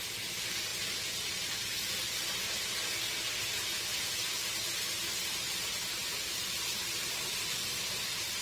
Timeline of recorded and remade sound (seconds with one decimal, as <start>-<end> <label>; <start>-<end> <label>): 0.0-0.7 remade; 0.7-4.1 recorded; 4.1-8.4 remade